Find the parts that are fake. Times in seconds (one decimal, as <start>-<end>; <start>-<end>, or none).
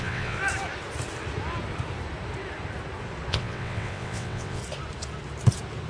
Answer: 0.0-0.4; 3.3-4.6